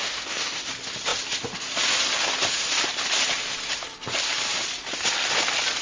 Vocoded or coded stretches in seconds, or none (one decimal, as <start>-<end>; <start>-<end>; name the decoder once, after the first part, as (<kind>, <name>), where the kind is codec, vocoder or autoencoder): 0.0-0.7 (autoencoder, DAC-VAE)